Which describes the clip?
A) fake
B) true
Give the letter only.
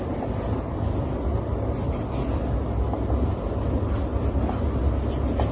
B